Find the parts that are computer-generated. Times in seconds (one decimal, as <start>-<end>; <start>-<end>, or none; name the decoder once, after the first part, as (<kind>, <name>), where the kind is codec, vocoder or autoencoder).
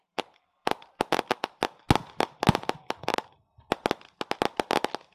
3.1-3.7 (vocoder, BigVGAN v2)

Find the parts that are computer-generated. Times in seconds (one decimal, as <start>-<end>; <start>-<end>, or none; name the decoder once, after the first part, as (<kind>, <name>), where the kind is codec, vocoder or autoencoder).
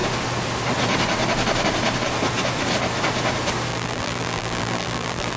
3.7-5.4 (vocoder, BigVGAN v2)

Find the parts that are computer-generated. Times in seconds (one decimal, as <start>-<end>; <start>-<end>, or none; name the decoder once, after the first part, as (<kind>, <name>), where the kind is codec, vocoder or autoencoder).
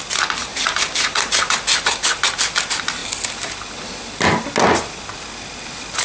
0.5-1.5 (vocoder, BigVGAN v2)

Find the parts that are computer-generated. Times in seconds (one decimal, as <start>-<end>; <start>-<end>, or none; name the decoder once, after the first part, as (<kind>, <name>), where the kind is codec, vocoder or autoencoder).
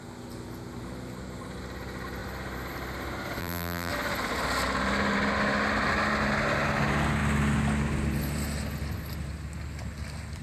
3.4-3.9 (vocoder, BigVGAN v2)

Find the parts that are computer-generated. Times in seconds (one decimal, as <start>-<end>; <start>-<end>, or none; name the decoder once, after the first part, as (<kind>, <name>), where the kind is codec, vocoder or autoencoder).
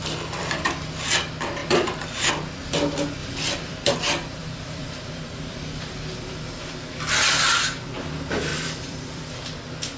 1.6-2.3 (vocoder, BigVGAN v2); 3.2-3.9; 4.4-6.6; 8.5-9.4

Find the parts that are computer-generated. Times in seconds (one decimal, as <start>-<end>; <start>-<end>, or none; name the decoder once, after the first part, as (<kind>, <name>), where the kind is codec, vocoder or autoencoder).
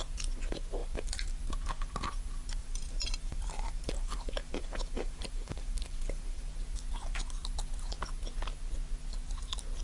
0.8-1.4 (vocoder, BigVGAN v2); 2.6-6.5